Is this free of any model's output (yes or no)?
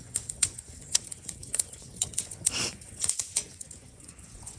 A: no